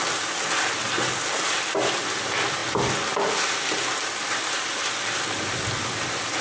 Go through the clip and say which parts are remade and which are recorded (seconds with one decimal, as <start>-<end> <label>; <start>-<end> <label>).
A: 0.0-6.4 recorded